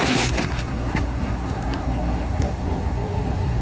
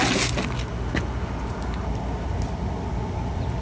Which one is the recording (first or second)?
second